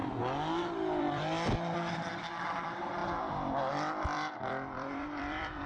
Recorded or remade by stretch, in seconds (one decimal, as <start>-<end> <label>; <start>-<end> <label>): 0.0-1.0 recorded; 1.0-5.7 remade